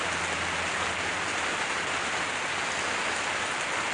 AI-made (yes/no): no